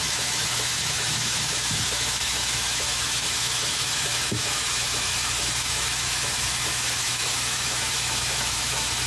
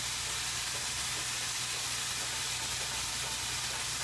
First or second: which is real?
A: second